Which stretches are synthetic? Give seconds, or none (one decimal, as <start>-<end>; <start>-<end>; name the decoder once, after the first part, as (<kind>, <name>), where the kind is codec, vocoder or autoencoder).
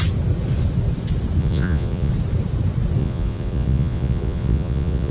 1.4-2.1 (vocoder, Vocos); 3.0-5.1